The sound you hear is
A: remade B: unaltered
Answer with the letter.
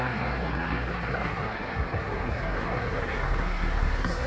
A